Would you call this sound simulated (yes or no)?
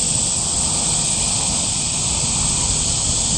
no